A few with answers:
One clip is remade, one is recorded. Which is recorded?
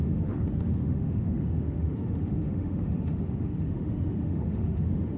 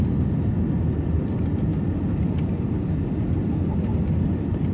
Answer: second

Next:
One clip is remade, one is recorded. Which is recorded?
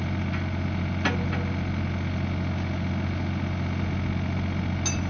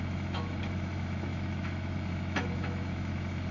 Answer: first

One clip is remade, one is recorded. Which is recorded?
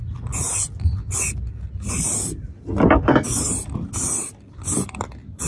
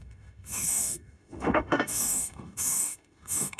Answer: first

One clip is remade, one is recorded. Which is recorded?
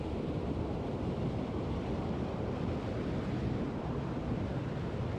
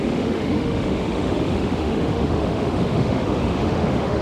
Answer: first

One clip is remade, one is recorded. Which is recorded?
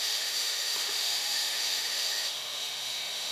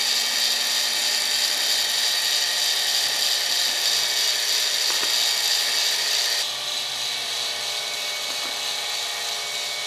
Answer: second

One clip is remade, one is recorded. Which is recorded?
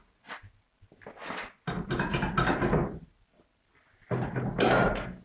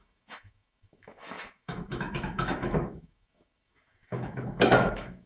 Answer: first